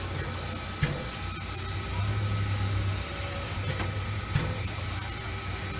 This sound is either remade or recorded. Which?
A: recorded